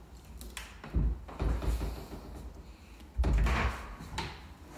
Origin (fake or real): real